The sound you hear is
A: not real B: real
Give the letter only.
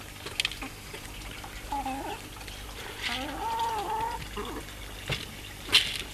B